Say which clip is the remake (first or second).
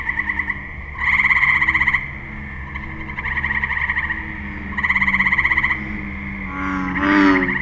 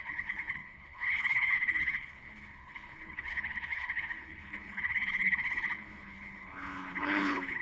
second